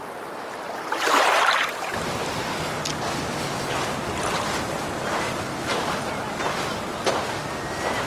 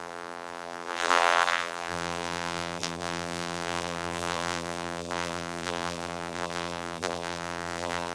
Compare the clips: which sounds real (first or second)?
first